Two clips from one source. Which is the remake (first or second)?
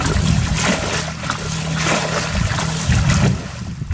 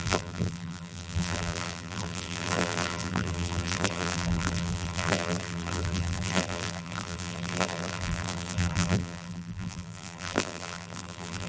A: second